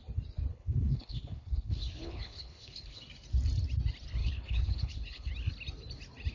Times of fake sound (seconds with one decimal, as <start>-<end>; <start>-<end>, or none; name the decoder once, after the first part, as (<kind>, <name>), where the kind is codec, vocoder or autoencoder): 0.5-3.0 (codec, HILCodec); 4.2-5.3